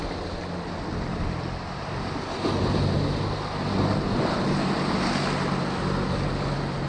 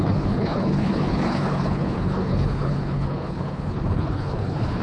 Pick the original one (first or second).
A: first